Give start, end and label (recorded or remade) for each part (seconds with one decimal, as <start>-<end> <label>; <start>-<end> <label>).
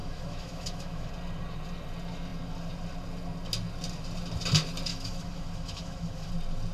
0.0-1.1 remade; 1.1-4.9 recorded; 4.9-6.3 remade; 6.3-6.7 recorded